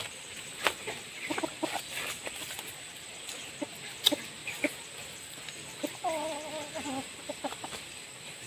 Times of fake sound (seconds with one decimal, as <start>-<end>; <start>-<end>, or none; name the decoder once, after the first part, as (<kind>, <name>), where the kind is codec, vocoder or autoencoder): 1.5-3.1 (vocoder, BigVGAN v2); 4.4-8.5

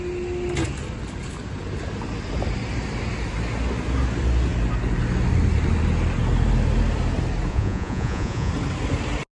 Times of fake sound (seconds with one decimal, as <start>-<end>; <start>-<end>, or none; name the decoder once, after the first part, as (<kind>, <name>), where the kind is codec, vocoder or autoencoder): 7.5-8.5 (vocoder, Vocos)

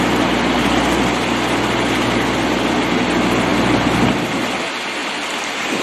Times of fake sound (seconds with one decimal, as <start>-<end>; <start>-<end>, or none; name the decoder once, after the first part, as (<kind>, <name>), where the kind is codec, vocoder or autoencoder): none